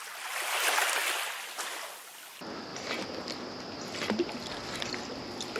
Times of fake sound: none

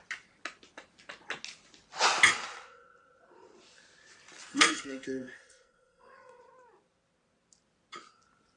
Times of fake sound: 4.5-6.4 (codec, SNAC)

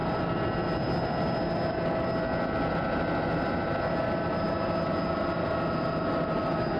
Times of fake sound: none

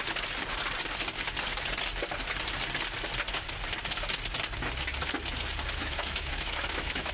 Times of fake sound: 5.8-7.1 (autoencoder, DAC-VAE)

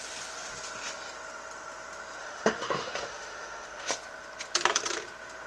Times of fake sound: 2.2-3.9 (autoencoder, DAC-VAE)